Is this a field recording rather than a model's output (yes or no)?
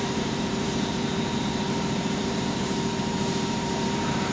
no